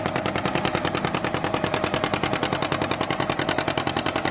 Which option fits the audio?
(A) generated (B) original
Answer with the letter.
B